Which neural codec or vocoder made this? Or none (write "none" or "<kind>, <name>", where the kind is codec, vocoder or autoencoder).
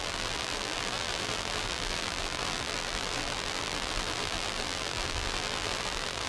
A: vocoder, BigVGAN v2